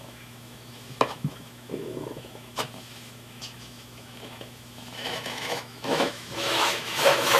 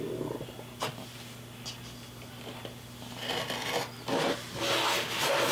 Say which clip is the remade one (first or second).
first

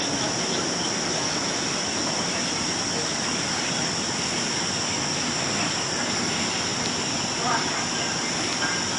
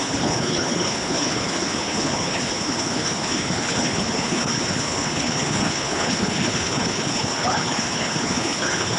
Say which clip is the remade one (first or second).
second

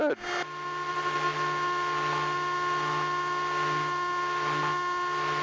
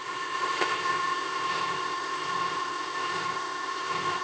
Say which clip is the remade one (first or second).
second